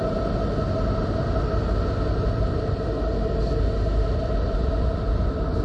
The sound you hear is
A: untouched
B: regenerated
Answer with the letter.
A